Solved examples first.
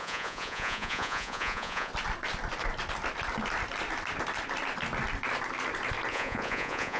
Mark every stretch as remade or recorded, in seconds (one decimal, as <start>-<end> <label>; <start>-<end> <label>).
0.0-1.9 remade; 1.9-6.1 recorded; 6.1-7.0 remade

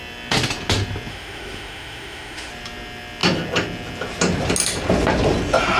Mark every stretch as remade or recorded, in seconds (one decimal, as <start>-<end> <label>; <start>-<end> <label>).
0.0-1.1 recorded; 1.1-2.5 remade; 2.5-5.8 recorded

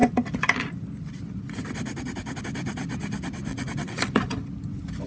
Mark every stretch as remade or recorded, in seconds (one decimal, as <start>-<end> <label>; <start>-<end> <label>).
0.0-3.5 recorded; 3.5-4.0 remade; 4.0-5.1 recorded